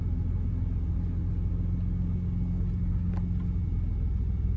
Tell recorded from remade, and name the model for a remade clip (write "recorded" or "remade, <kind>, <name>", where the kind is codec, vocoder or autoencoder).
recorded